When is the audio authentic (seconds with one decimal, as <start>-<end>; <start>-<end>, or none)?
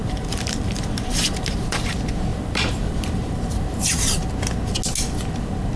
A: 1.9-2.3; 4.3-5.8